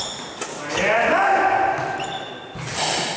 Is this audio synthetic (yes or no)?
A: no